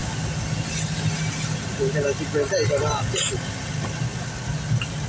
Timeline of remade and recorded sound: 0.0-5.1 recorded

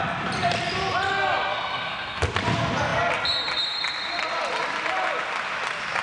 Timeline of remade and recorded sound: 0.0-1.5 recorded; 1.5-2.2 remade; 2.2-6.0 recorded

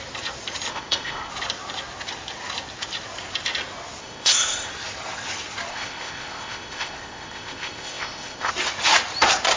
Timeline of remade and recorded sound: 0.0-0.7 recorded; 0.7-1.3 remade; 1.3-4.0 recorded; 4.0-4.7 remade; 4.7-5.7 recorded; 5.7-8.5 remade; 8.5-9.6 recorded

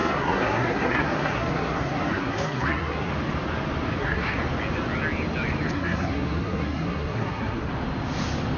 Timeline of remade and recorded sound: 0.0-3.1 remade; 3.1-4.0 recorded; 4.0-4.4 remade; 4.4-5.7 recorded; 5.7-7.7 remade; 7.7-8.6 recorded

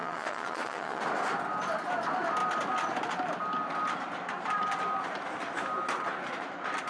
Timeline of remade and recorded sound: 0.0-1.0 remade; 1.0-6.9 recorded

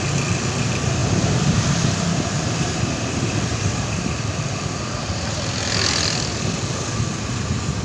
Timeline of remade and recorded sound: 0.0-1.0 recorded; 1.0-5.3 remade; 5.3-7.8 recorded